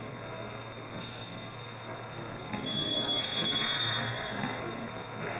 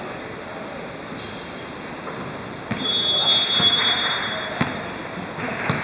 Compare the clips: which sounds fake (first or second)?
first